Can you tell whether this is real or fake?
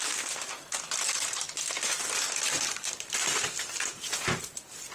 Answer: real